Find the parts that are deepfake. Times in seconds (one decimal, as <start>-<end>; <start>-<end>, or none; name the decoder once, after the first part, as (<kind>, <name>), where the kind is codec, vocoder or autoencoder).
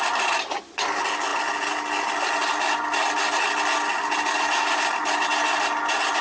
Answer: none